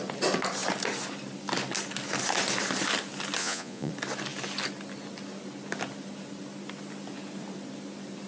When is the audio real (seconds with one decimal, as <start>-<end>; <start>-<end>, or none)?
0.0-3.4; 3.9-8.3